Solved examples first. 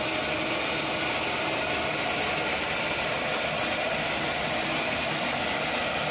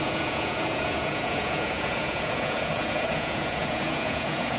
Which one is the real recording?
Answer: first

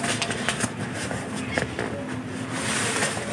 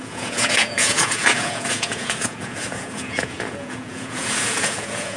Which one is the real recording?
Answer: first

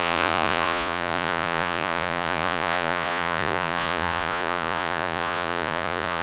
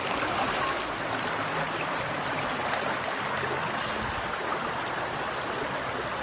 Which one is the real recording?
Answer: second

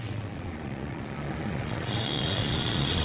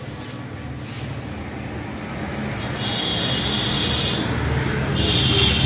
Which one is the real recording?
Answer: second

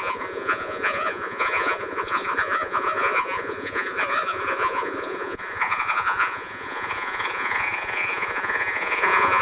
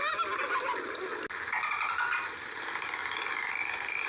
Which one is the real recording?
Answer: second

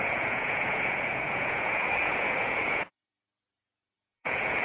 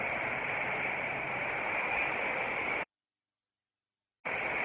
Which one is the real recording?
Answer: second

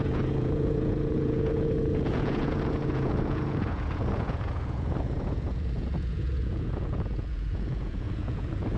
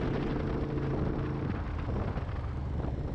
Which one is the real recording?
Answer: second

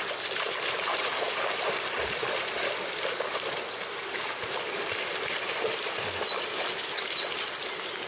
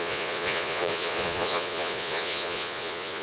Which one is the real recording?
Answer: first